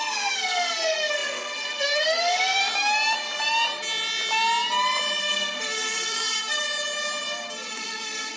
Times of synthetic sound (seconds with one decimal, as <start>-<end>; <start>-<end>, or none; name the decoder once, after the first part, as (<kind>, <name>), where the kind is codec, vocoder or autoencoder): 0.0-2.6 (codec, SNAC); 5.2-6.6; 7.7-8.4

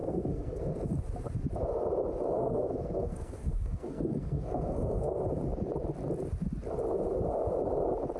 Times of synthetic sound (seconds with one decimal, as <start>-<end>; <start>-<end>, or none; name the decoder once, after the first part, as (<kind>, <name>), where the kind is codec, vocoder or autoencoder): 0.0-0.9 (codec, SNAC); 2.4-5.2

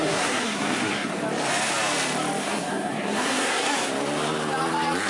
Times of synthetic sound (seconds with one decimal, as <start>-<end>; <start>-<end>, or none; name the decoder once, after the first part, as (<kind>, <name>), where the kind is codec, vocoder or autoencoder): 0.0-1.2 (codec, SNAC); 2.4-3.9

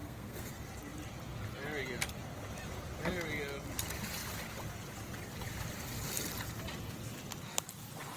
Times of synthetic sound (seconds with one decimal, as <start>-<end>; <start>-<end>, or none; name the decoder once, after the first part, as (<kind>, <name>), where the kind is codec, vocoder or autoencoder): 0.0-0.6 (codec, SNAC)

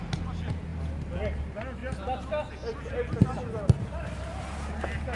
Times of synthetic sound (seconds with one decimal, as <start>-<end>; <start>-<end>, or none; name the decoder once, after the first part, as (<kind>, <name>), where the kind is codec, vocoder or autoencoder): none